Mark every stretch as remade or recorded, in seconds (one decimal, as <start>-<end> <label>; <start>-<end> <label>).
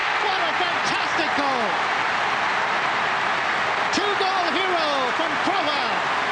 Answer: 0.0-6.3 recorded